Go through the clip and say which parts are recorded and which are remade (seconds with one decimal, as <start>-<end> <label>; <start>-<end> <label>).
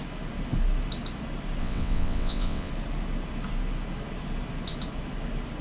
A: 0.0-1.6 recorded; 1.6-2.7 remade; 2.7-5.6 recorded